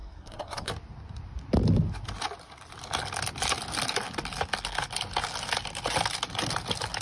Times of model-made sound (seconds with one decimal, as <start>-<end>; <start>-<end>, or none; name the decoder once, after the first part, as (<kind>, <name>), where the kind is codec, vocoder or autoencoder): 0.0-0.7 (codec, SNAC)